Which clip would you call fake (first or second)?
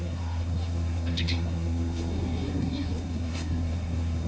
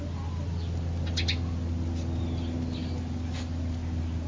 first